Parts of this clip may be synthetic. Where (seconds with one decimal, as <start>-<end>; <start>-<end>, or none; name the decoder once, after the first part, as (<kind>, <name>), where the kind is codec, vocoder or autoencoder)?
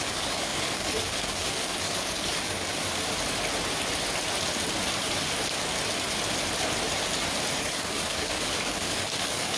0.0-2.8 (codec, DAC); 7.6-9.6